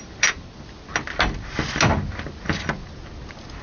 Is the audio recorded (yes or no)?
yes